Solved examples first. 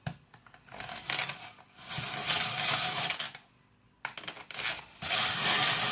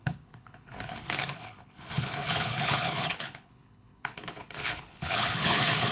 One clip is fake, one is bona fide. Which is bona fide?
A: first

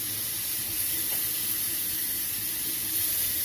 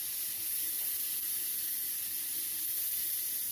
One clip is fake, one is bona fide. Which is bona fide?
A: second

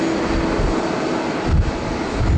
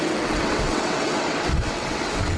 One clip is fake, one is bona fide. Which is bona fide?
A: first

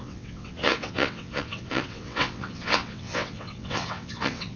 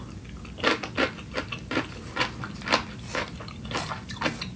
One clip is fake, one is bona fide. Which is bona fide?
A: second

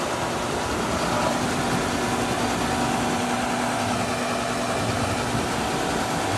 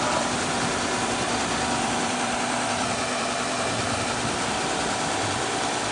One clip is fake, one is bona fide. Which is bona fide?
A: first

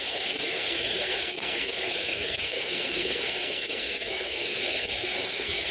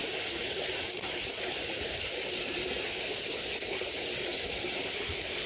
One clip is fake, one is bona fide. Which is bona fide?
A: second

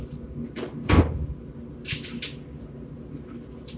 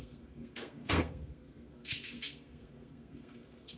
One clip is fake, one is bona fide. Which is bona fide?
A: first